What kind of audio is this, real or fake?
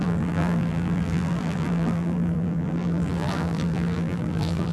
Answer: fake